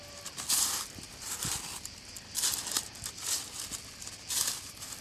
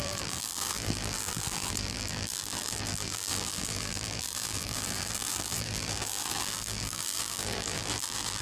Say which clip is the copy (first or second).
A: second